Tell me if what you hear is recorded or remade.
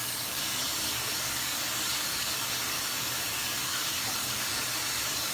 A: remade